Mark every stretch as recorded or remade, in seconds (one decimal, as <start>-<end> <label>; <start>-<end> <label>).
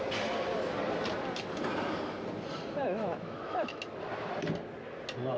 0.0-2.8 recorded; 2.8-3.8 remade; 3.8-5.4 recorded